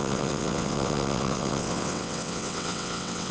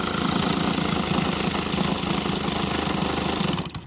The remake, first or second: first